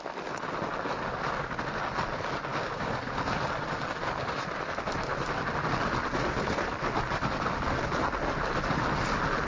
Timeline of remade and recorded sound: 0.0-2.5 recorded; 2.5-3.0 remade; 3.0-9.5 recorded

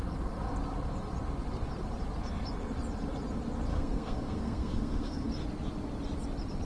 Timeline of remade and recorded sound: 0.0-3.7 recorded; 3.7-5.3 remade; 5.3-6.6 recorded

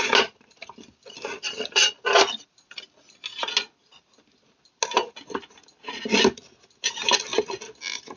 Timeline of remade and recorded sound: 0.0-8.2 recorded

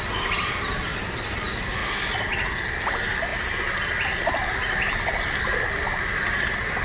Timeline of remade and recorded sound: 0.0-6.8 recorded

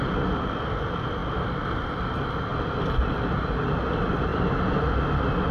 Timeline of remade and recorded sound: 0.0-5.5 recorded

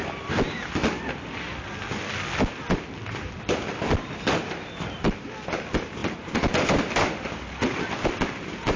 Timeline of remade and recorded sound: 0.0-6.0 remade; 6.0-6.7 recorded; 6.7-8.8 remade